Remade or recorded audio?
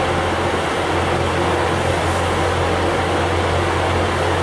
recorded